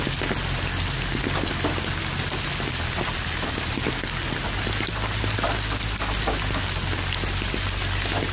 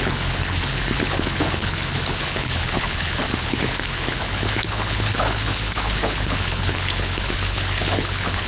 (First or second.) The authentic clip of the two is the first